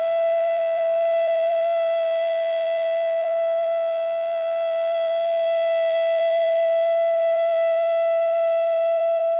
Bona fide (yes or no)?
no